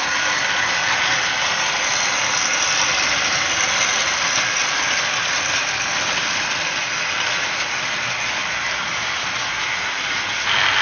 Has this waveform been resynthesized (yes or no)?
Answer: no